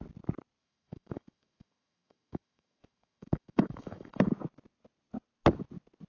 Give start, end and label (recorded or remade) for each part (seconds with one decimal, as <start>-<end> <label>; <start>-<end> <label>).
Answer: 0.0-0.6 recorded; 0.6-4.3 remade; 4.3-6.1 recorded